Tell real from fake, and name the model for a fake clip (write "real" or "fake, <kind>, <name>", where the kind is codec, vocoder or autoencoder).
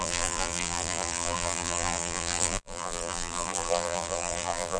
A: fake, vocoder, BigVGAN v2